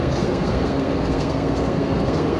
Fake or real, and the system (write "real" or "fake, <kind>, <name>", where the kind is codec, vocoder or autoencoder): fake, codec, SNAC